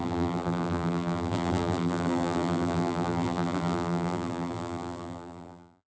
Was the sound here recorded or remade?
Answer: remade